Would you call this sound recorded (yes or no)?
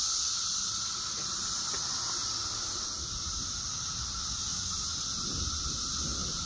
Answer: yes